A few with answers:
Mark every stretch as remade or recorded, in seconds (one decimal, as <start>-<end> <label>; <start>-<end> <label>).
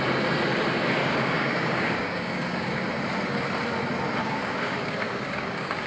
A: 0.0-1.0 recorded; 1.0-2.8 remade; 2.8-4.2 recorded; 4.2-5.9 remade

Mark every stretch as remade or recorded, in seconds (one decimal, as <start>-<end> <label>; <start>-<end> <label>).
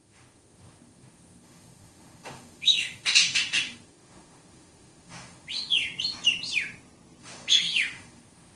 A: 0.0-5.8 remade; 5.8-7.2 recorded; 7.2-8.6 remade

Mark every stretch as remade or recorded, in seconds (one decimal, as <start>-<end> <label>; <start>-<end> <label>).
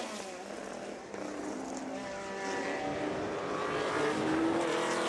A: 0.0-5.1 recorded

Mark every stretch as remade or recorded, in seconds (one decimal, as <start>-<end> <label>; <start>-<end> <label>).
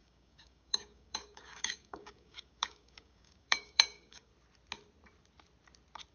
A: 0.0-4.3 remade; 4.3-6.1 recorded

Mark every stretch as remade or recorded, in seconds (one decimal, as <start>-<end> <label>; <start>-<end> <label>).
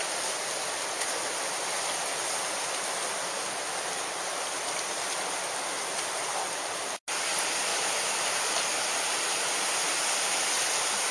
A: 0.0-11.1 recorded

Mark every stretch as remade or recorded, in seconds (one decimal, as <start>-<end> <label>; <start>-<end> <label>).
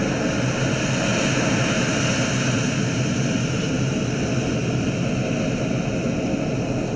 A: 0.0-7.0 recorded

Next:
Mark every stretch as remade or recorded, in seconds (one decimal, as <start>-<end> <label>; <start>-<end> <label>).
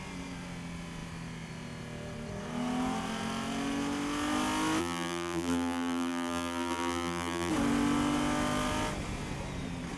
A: 0.0-4.8 recorded; 4.8-7.5 remade; 7.5-10.0 recorded